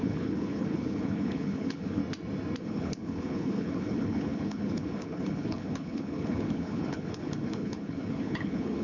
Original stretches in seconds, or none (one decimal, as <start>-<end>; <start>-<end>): 2.0-2.6